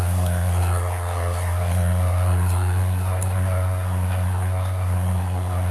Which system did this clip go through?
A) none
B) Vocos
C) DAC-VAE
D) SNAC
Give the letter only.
D